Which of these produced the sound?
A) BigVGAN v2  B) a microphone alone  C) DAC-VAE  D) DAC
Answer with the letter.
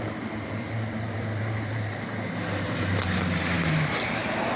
A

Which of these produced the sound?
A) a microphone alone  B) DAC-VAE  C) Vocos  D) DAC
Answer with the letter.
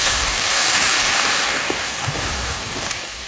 D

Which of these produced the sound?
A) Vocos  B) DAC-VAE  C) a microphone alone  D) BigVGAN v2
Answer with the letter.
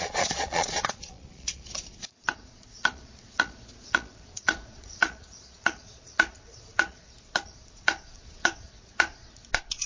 A